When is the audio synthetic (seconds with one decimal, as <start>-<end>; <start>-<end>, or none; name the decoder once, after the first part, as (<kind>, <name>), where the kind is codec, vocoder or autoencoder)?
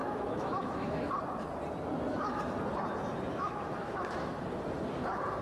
0.0-1.1 (autoencoder, DAC-VAE); 3.3-4.4